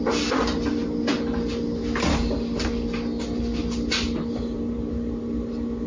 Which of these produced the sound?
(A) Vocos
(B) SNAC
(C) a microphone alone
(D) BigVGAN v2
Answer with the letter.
C